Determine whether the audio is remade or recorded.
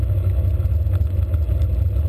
recorded